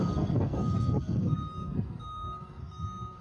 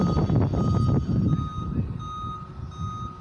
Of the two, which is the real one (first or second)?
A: second